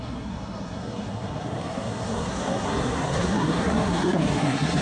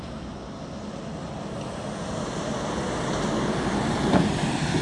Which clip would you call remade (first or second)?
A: first